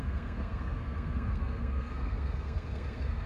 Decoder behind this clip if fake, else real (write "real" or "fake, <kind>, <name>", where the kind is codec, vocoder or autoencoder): fake, codec, SNAC